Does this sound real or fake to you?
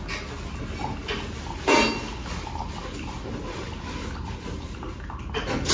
real